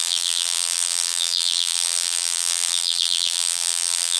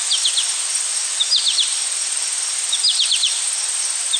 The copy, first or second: first